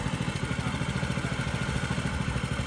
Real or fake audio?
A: real